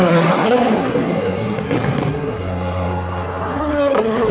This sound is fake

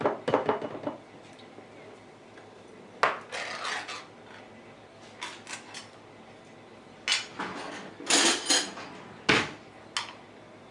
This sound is real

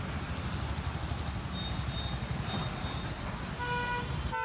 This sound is real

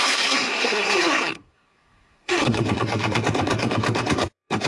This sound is fake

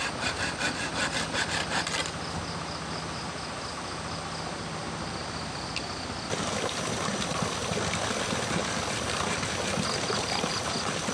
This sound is real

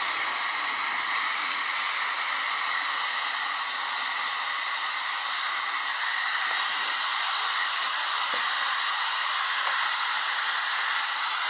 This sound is real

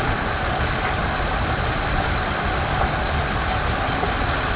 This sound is real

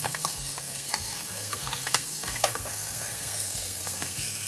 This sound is fake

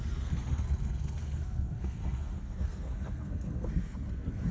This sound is fake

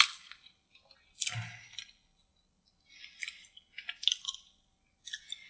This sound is real